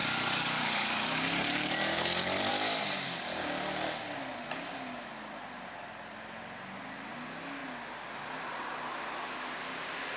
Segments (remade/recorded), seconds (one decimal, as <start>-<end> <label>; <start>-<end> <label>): 0.0-2.5 remade; 2.5-10.2 recorded